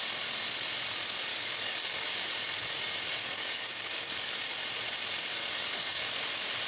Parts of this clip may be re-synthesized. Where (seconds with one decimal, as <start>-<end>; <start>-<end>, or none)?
1.3-2.2; 3.2-4.4; 5.4-6.0